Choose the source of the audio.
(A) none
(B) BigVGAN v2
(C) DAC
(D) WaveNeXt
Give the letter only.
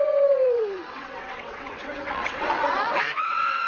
D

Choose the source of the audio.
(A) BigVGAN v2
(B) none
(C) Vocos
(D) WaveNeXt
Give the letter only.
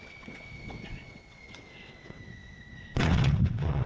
D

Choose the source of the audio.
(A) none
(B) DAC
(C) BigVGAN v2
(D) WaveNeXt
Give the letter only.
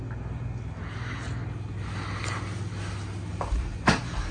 A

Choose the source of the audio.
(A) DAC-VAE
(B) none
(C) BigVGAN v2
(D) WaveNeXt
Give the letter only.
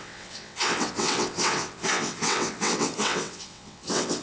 D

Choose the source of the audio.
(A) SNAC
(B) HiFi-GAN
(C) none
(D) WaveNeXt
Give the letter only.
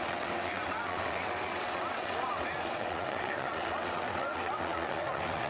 D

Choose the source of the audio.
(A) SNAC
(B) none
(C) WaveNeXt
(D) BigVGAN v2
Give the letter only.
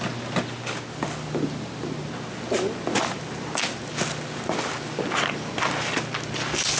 B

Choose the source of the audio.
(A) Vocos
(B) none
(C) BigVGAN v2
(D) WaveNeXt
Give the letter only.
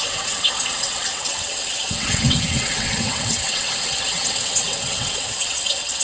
D